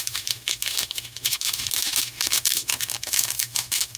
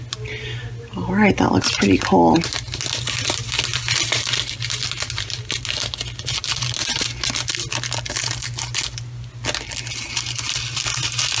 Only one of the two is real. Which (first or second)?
second